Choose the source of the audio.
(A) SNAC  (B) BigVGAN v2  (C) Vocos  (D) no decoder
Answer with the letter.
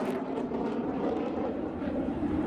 B